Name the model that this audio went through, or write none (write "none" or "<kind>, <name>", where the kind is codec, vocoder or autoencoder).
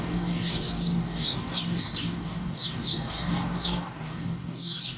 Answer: codec, DAC